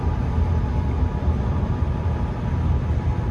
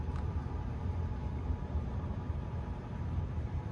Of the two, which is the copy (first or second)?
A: second